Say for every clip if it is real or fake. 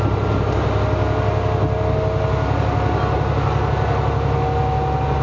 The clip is real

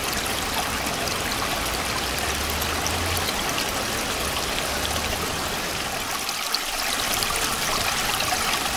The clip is real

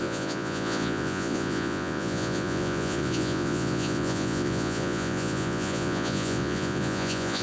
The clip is fake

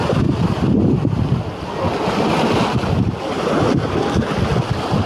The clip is real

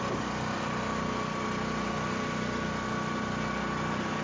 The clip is real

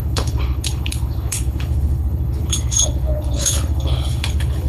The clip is fake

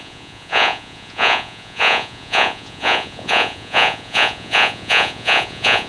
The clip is fake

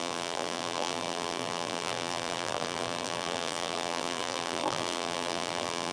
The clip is fake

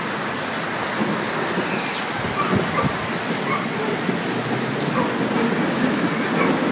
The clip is real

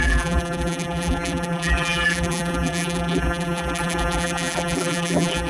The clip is fake